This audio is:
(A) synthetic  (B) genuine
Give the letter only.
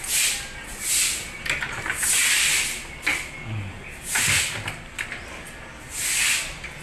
B